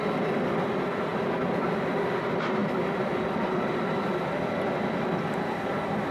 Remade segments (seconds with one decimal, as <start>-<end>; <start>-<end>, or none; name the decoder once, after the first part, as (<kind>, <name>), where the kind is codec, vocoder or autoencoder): 1.1-1.9 (vocoder, BigVGAN v2); 2.6-6.1